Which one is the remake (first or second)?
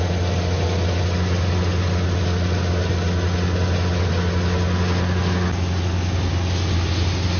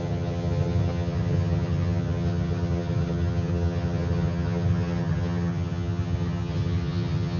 second